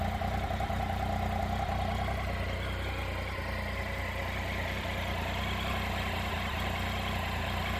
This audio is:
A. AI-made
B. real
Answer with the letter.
B